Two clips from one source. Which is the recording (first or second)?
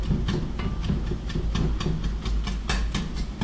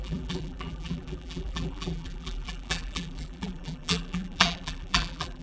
first